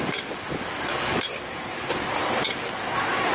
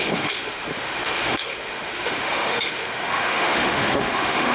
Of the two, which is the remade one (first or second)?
second